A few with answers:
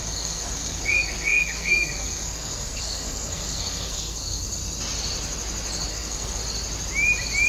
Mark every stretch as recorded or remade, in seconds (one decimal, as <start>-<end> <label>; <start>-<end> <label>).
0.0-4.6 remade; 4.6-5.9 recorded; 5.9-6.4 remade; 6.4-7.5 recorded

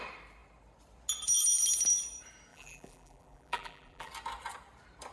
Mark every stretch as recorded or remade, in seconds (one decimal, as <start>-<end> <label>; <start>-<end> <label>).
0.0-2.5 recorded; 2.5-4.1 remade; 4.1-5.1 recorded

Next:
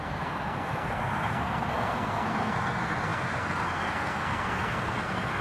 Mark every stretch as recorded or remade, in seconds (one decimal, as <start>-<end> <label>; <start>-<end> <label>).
0.0-5.4 remade